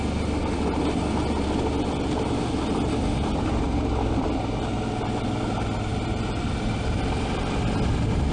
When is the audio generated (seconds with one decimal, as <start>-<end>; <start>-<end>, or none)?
none